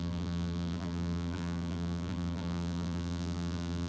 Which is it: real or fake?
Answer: fake